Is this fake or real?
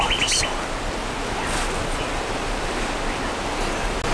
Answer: real